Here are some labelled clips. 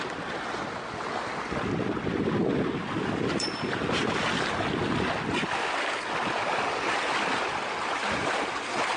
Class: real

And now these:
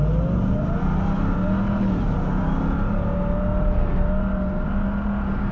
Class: real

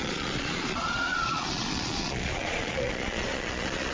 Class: fake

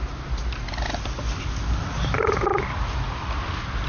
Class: real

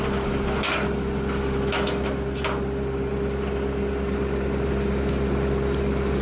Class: real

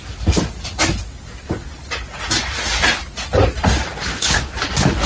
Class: real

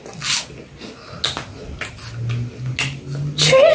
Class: real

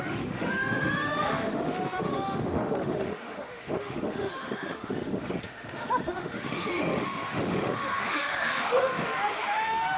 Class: fake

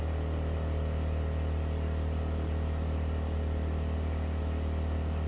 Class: real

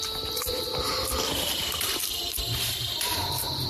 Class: real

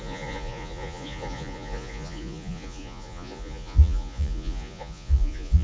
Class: fake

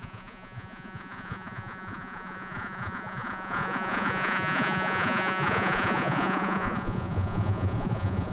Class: fake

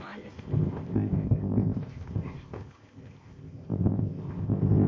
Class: fake